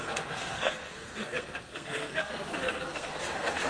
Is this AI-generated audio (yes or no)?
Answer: yes